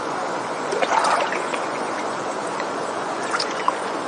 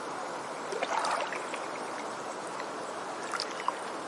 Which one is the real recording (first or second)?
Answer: second